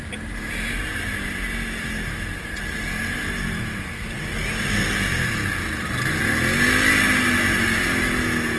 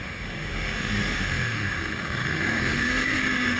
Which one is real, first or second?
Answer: first